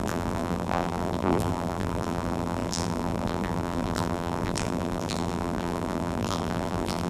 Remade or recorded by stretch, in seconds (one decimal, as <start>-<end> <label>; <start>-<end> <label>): 0.0-7.1 remade